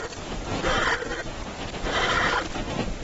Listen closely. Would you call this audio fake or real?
real